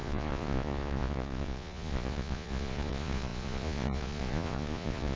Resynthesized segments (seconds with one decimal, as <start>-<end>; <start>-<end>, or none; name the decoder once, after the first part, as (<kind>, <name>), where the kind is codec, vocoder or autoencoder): 0.0-5.2 (vocoder, Vocos)